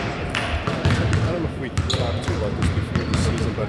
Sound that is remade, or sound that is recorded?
recorded